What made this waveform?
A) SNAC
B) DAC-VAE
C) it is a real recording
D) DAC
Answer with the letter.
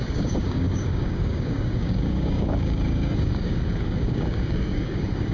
D